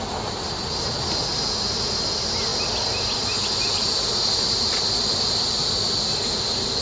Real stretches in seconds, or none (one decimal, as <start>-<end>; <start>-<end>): 0.0-6.8